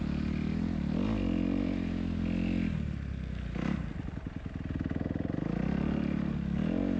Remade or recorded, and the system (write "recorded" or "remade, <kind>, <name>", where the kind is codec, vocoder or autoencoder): recorded